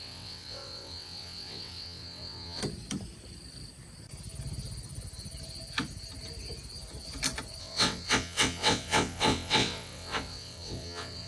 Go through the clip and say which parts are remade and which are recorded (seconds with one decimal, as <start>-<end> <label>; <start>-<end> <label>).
0.0-2.6 remade; 2.6-7.6 recorded; 7.6-11.3 remade